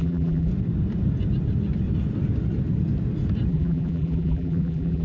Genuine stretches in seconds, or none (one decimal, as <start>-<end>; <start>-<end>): 0.5-3.5